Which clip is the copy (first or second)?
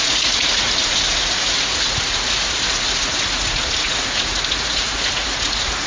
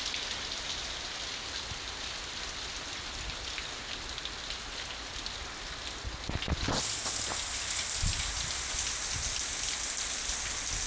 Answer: first